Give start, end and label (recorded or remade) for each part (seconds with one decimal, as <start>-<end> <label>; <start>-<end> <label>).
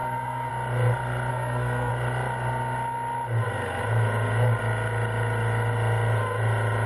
0.0-0.5 remade; 0.5-1.3 recorded; 1.3-1.9 remade; 1.9-6.9 recorded